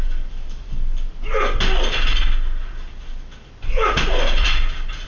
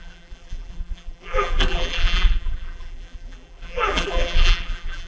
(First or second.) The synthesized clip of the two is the second